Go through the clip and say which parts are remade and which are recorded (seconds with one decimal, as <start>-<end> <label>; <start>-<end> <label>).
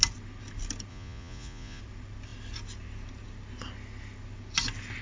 0.0-0.9 recorded; 0.9-1.8 remade; 1.8-5.0 recorded